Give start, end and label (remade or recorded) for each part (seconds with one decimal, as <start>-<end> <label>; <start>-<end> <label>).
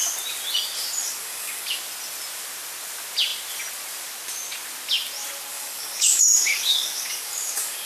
0.0-1.0 recorded; 1.0-1.8 remade; 1.8-5.5 recorded; 5.5-7.9 remade